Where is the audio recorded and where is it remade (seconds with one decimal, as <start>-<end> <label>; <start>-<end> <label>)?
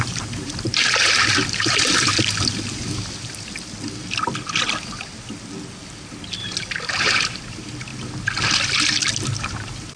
0.0-2.1 remade; 2.1-7.0 recorded; 7.0-7.9 remade; 7.9-9.4 recorded; 9.4-10.0 remade